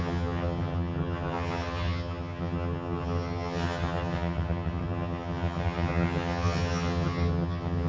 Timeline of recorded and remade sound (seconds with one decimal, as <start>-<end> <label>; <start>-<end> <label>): 0.0-7.9 remade